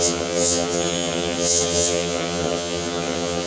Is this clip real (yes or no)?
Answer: no